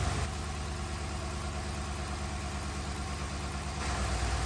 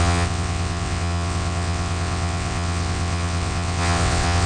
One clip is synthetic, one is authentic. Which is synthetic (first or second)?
second